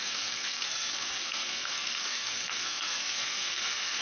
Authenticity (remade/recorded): remade